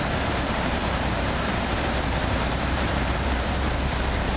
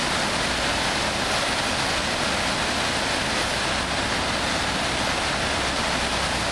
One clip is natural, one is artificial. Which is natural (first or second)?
second